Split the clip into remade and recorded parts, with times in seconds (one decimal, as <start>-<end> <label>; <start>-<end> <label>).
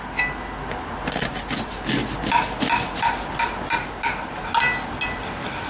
0.0-5.7 recorded